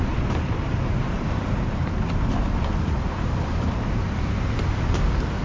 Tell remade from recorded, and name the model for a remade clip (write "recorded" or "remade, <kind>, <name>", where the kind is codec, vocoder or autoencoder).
remade, vocoder, BigVGAN v2